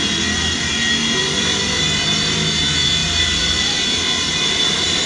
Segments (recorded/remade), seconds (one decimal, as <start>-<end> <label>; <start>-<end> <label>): 0.0-5.1 recorded